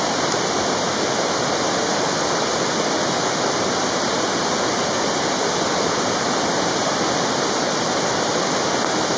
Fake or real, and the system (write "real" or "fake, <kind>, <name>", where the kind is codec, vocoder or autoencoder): real